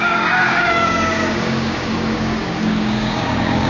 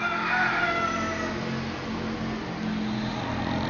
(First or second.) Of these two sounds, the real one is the second